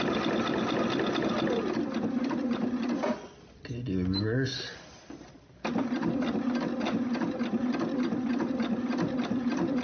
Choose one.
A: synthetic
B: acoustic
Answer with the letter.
B